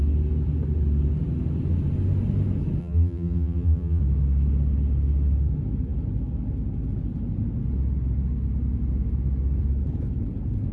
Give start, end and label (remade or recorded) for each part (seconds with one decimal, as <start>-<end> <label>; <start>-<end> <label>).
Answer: 0.0-2.8 recorded; 2.8-4.0 remade; 4.0-10.7 recorded